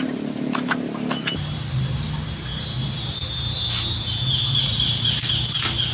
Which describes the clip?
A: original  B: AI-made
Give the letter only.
A